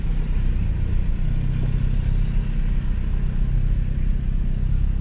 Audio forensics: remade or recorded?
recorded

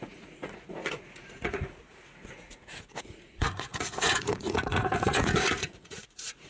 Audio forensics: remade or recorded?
remade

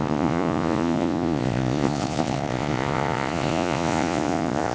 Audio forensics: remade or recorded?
remade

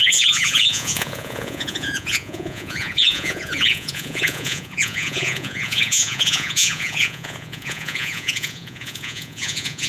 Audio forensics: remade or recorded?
remade